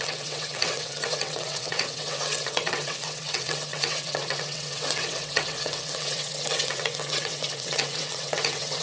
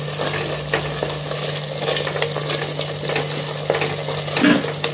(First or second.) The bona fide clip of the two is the second